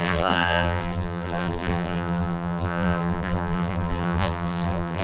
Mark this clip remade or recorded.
remade